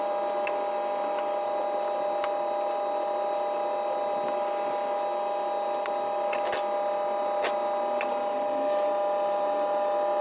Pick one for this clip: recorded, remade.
recorded